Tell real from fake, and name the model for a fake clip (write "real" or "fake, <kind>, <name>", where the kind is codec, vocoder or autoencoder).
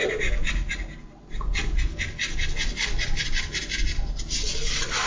real